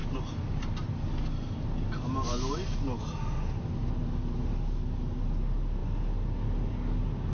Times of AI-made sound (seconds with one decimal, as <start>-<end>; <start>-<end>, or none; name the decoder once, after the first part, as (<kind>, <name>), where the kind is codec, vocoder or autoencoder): none